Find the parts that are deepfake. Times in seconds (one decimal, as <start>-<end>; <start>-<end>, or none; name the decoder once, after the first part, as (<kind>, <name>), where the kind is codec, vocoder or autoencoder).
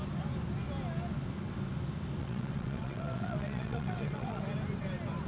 2.2-4.4 (vocoder, WaveNeXt)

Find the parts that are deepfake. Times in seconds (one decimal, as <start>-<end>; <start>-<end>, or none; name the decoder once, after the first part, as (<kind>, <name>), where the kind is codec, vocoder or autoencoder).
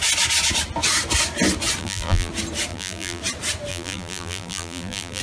1.8-2.3 (vocoder, BigVGAN v2); 2.7-3.2; 3.7-5.2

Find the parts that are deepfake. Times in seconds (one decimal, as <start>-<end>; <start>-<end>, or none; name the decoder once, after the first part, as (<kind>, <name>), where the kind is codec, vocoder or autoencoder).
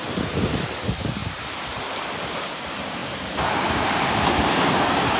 0.0-1.2 (vocoder, BigVGAN v2); 2.2-5.2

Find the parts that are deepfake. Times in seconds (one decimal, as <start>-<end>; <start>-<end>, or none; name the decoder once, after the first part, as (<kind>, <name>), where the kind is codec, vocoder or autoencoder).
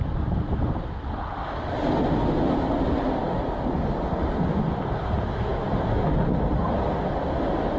none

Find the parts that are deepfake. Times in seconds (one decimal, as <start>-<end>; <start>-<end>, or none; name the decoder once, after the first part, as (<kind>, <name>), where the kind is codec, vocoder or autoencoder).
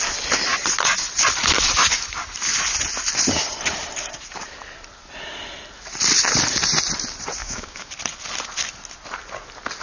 7.4-7.9 (autoencoder, DAC-VAE)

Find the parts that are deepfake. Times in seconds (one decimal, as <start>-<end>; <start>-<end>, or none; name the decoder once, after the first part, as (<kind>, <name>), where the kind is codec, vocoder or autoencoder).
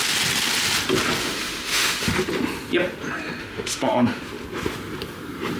1.2-2.1 (autoencoder, DAC-VAE); 3.4-4.2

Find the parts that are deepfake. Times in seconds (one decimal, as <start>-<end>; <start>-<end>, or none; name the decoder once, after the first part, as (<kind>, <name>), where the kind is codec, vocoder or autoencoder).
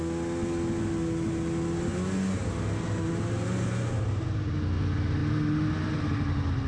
none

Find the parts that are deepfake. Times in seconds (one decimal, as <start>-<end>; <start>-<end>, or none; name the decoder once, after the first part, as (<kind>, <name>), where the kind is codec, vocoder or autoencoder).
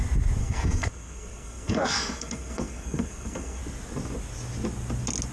0.4-3.6 (codec, SNAC)